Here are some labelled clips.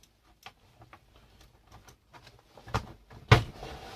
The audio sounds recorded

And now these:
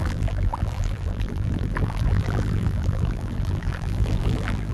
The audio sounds remade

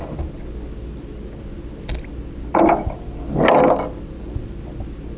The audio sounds recorded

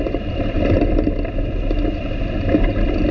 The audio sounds remade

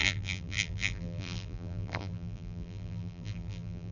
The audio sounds remade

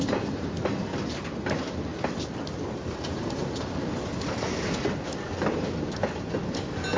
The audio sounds recorded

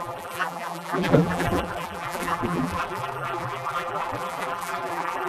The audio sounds remade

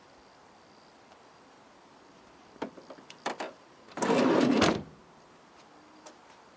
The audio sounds remade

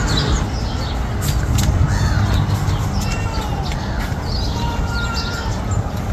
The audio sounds recorded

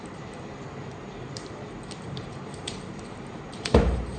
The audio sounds remade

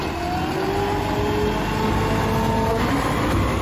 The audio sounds recorded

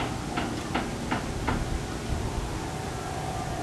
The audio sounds recorded